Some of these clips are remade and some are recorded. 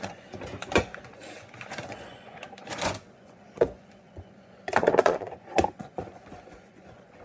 remade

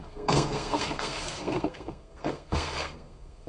remade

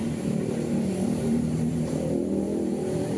remade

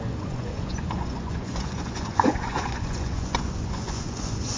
remade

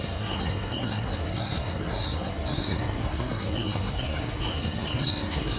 remade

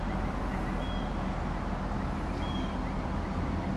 recorded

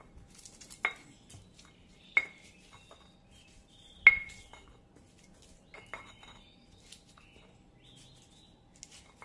recorded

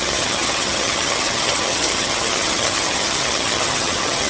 remade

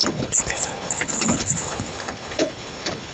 remade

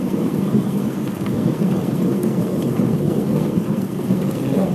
remade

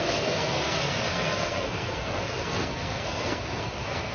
remade